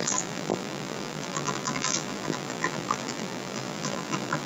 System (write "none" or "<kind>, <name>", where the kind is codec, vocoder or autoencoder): vocoder, BigVGAN v2